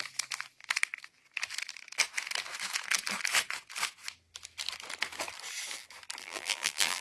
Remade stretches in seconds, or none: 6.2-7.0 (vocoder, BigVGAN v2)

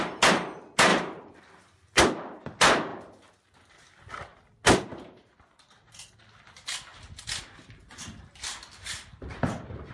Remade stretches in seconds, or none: none

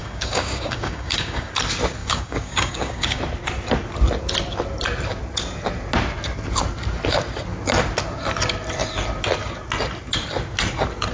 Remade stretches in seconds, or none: 0.0-1.5 (codec, DAC); 2.0-3.2

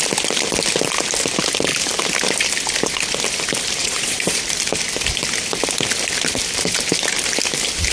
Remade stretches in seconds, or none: 3.8-4.4 (vocoder, Vocos)